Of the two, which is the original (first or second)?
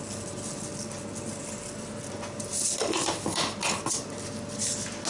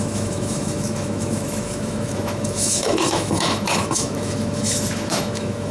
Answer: first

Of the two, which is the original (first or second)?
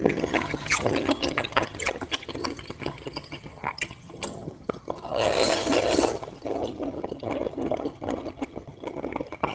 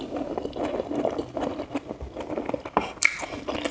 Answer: second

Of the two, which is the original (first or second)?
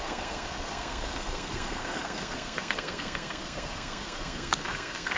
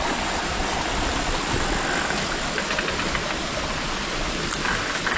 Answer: second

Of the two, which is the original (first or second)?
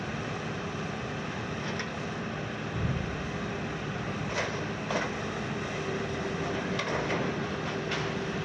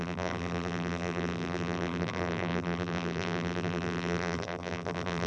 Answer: first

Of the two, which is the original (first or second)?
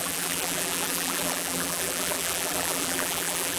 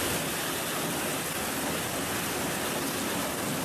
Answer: second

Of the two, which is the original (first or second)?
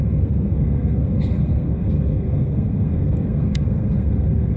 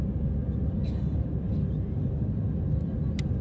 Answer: second